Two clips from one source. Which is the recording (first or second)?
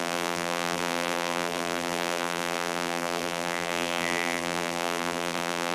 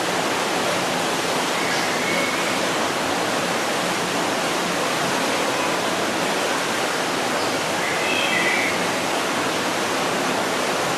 second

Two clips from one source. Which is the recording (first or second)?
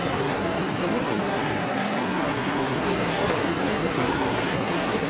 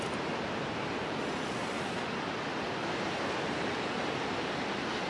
second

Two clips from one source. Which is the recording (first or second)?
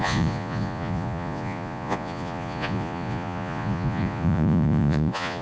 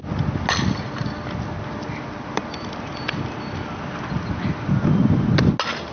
second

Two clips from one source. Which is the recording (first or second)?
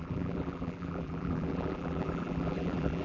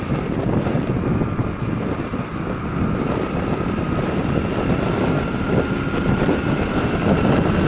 second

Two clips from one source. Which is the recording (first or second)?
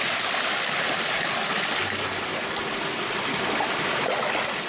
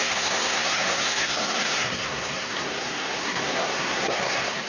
first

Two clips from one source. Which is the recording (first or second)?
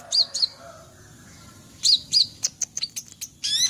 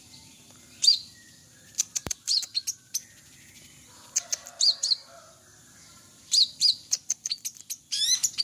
first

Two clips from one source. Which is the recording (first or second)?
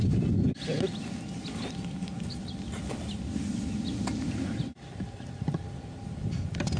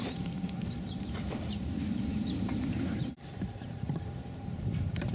first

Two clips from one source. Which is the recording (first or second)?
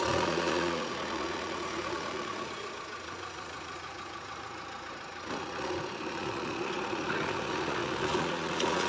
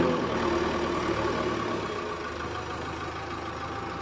second